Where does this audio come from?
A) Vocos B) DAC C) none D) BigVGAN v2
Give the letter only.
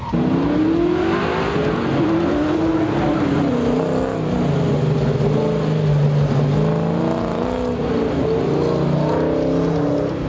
C